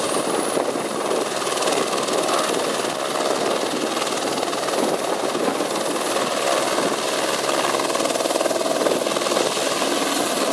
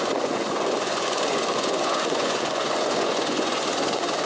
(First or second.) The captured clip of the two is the first